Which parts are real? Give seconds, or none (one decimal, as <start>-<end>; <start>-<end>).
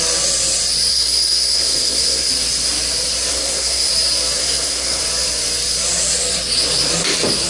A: 0.0-0.9; 2.3-3.3; 3.9-4.4; 5.0-7.5